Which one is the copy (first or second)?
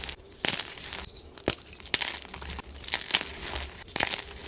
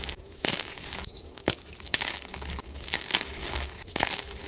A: second